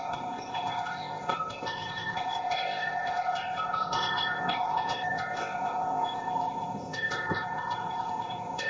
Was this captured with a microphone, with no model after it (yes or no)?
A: no